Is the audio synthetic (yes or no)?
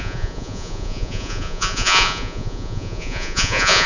yes